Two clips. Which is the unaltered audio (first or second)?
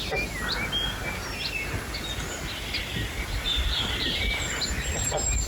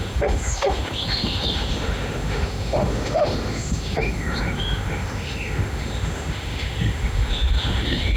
first